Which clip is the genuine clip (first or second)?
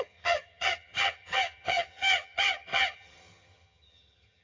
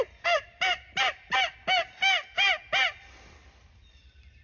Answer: second